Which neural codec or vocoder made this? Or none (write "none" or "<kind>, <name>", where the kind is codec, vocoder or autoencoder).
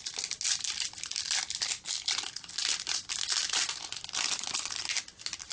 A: none